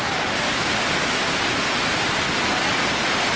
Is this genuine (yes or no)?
yes